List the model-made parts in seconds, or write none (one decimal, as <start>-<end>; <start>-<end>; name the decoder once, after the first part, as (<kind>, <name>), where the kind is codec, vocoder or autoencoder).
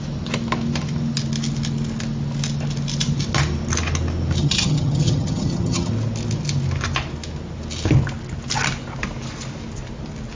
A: 4.4-5.9 (vocoder, HiFi-GAN)